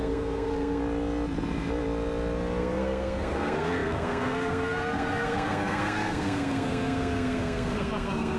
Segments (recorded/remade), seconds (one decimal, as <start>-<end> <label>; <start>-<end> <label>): 0.0-0.8 remade; 0.8-2.6 recorded; 2.6-8.4 remade